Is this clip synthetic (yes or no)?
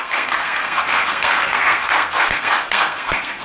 yes